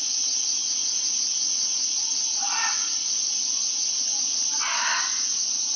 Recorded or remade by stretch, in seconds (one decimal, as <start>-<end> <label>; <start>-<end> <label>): 0.0-0.6 recorded; 0.6-1.2 remade; 1.2-2.3 recorded; 2.3-3.7 remade; 3.7-5.8 recorded